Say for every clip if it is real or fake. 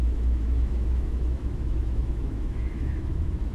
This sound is fake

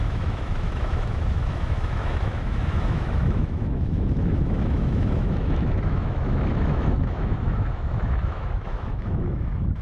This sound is fake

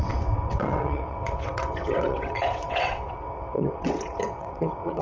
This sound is fake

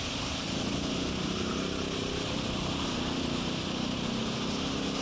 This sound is real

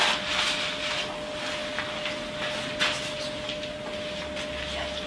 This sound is real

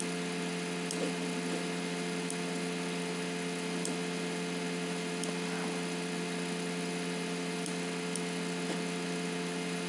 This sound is real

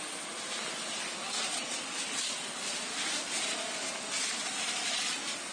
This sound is real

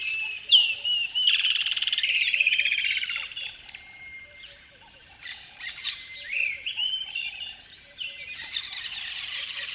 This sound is fake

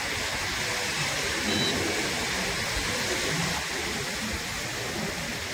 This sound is real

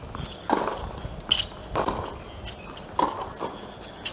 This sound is real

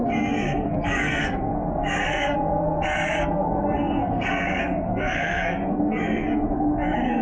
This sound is fake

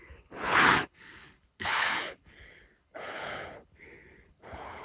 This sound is fake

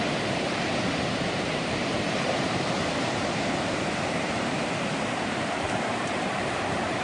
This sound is fake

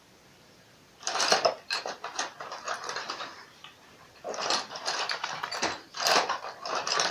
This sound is fake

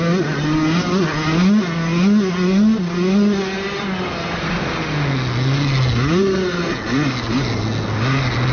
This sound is real